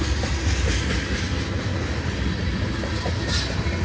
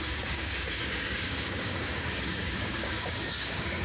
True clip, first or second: first